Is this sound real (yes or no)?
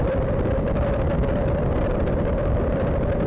yes